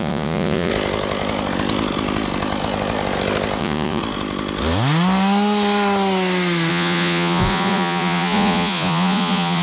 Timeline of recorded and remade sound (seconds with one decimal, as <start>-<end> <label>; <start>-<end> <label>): 0.0-0.7 remade; 0.7-3.6 recorded; 3.6-4.0 remade; 4.0-6.7 recorded; 6.7-9.6 remade